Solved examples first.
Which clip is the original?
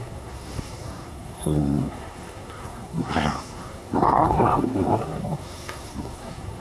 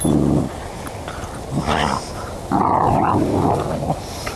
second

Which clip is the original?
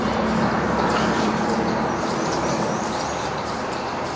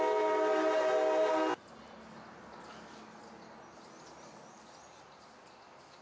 second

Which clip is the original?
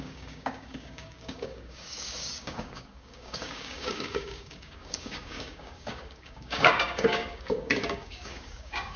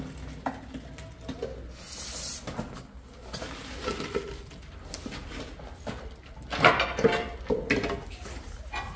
second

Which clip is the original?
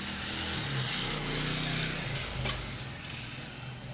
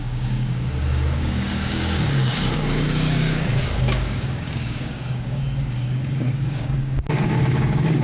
first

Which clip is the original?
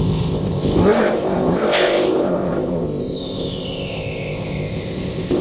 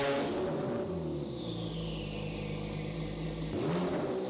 second